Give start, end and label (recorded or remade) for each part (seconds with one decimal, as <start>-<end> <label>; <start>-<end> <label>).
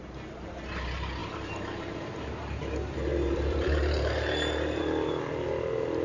0.0-1.2 recorded; 1.2-4.8 remade; 4.8-6.0 recorded